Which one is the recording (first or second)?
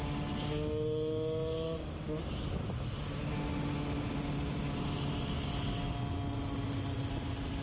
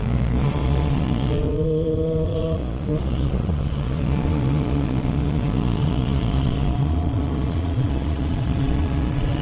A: first